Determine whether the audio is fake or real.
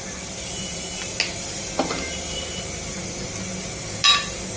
real